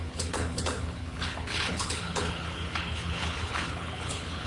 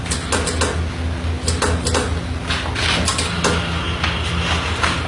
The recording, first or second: second